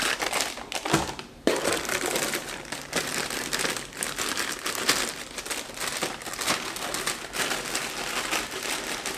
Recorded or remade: recorded